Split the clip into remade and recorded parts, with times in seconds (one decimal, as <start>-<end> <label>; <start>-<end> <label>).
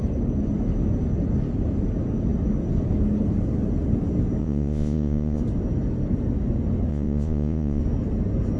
0.0-4.4 recorded; 4.4-5.4 remade; 5.4-6.9 recorded; 6.9-7.8 remade; 7.8-8.6 recorded